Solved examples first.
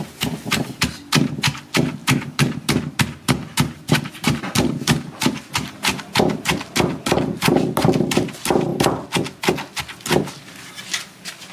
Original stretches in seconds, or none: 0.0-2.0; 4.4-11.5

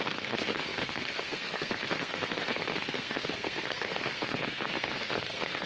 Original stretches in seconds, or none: none

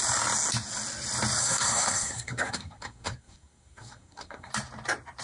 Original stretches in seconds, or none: 0.0-1.4; 4.5-5.2

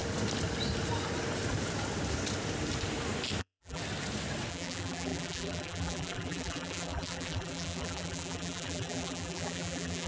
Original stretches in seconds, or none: 0.0-3.4; 3.8-4.5

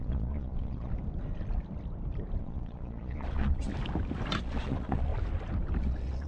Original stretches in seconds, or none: 0.9-2.4; 3.7-4.4; 5.1-5.8